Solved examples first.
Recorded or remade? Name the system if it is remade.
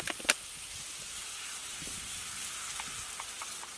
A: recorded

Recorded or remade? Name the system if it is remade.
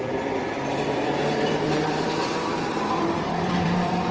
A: remade, vocoder, BigVGAN v2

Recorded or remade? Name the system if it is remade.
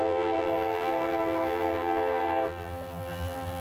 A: remade, vocoder, BigVGAN v2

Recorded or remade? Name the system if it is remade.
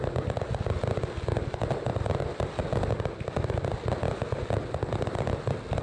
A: recorded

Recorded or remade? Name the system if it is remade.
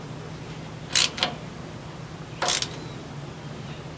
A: recorded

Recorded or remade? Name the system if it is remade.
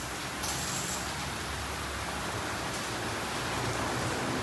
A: recorded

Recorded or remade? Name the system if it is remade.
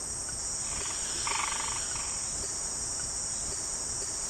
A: recorded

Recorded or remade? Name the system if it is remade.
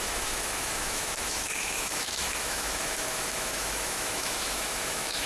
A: remade, autoencoder, DAC-VAE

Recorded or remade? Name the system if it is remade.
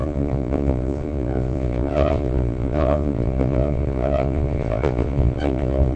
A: remade, vocoder, Vocos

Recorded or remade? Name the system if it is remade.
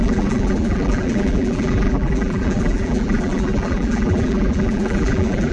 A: remade, vocoder, BigVGAN v2